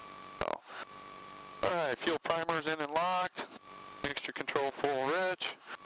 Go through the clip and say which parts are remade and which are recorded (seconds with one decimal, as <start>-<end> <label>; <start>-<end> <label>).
0.0-5.9 recorded

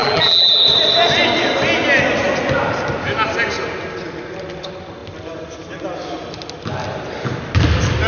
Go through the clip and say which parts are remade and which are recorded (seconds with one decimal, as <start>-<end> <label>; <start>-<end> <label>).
0.0-0.6 remade; 0.6-8.1 recorded

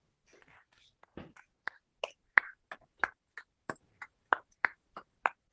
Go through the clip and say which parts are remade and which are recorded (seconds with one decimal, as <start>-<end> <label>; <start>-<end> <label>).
0.0-1.9 recorded; 1.9-5.5 remade

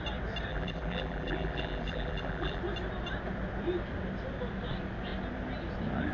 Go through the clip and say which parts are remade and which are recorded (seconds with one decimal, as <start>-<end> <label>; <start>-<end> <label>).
0.0-0.5 recorded; 0.5-2.6 remade; 2.6-6.1 recorded

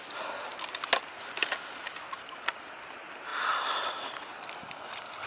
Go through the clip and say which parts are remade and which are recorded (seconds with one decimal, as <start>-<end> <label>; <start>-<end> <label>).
0.0-3.3 recorded; 3.3-5.3 remade

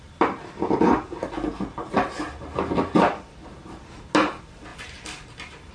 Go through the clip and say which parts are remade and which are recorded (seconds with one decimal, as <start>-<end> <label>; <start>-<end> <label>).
0.0-4.7 recorded; 4.7-5.7 remade

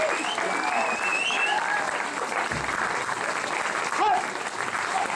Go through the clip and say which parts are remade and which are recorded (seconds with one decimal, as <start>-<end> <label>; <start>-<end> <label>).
0.0-1.1 recorded; 1.1-4.2 remade; 4.2-5.2 recorded

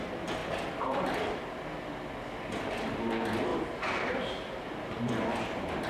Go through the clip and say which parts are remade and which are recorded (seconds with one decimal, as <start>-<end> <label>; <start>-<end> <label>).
0.0-0.4 recorded; 0.4-1.4 remade; 1.4-3.5 recorded; 3.5-5.9 remade